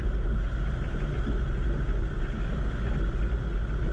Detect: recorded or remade recorded